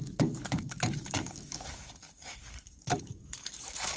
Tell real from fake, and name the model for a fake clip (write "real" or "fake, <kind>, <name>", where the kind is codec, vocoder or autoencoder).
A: fake, codec, DAC